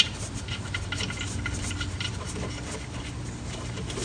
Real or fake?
real